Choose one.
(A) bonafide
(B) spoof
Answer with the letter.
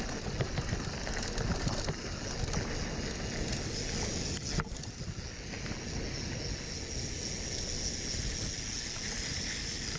A